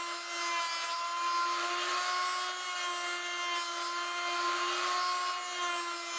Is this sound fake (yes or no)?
no